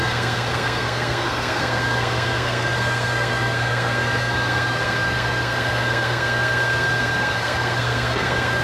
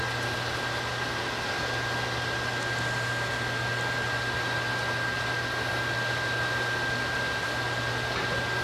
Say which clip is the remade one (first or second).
first